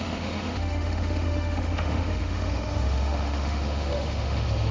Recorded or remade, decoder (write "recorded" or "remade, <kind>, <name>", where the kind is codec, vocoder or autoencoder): remade, autoencoder, DAC-VAE